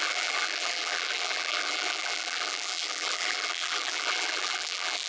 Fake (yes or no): yes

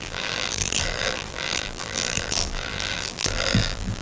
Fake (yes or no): yes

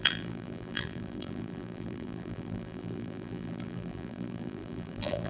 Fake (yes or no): yes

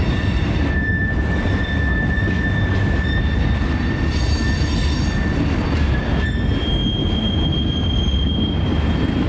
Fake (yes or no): no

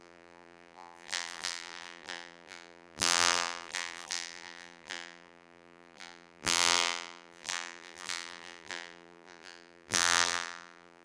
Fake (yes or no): yes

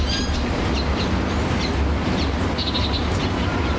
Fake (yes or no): no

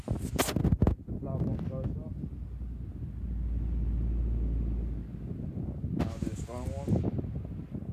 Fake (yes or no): no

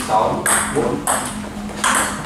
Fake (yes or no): no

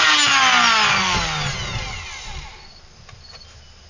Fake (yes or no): no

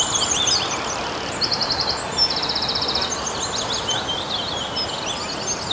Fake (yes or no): no